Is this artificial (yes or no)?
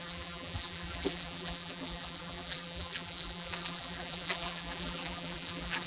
yes